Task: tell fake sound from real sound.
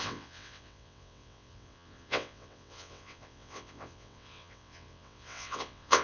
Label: fake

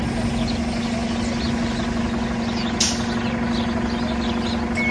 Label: real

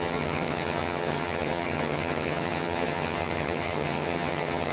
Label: fake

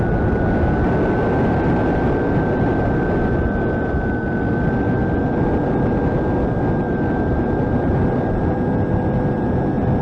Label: real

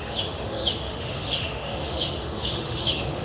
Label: fake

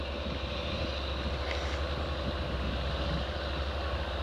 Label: real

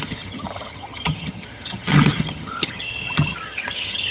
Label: fake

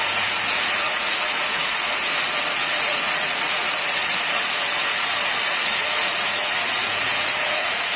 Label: fake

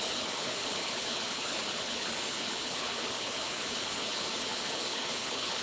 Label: fake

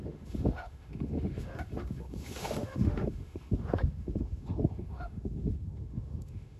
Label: fake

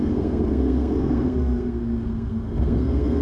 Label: fake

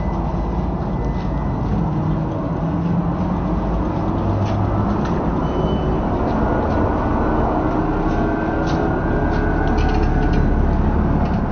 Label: real